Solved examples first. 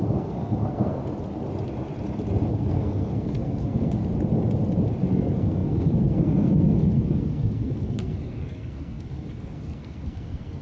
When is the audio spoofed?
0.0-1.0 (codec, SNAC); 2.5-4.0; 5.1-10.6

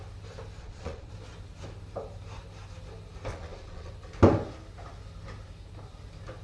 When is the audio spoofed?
0.6-1.1 (vocoder, Vocos); 3.3-3.9

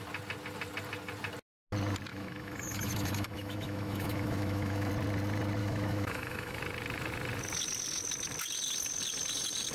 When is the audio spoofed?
2.1-4.9 (autoencoder, DAC-VAE); 5.6-6.6

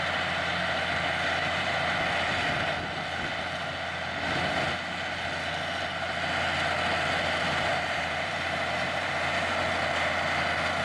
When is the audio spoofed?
1.4-2.0 (vocoder, BigVGAN v2); 7.7-9.1

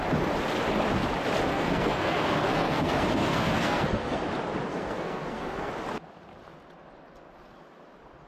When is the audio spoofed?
1.5-4.2 (codec, SNAC); 4.7-5.7

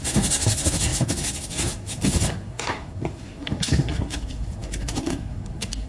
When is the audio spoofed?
0.0-5.9 (codec, SNAC)

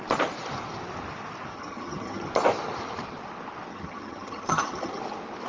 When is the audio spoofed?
1.5-2.3 (vocoder, HiFi-GAN); 3.7-5.0